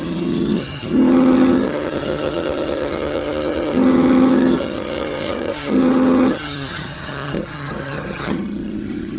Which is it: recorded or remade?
remade